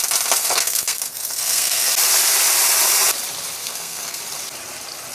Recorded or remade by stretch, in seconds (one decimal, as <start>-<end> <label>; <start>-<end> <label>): 0.0-0.4 recorded; 0.4-1.9 remade; 1.9-3.6 recorded; 3.6-4.2 remade; 4.2-5.1 recorded